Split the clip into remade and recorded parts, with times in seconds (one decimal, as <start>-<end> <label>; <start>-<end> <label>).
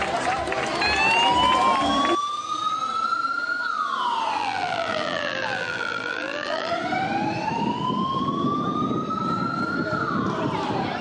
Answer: 0.0-4.4 recorded; 4.4-6.7 remade; 6.7-11.0 recorded